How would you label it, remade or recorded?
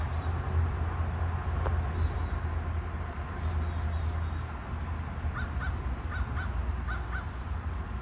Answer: recorded